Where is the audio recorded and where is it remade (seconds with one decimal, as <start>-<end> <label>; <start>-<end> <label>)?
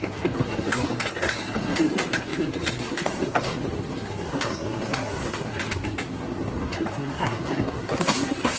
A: 0.0-8.6 remade